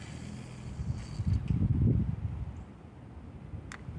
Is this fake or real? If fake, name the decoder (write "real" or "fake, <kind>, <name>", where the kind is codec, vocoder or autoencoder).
real